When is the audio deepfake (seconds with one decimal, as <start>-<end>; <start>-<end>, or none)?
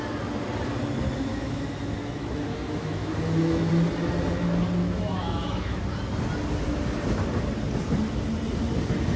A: 1.3-3.7; 4.8-5.8